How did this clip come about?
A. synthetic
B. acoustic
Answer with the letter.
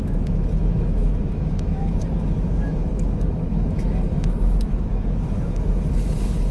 A